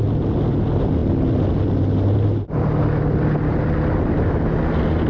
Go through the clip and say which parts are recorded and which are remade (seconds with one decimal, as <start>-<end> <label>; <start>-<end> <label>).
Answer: 0.0-5.1 recorded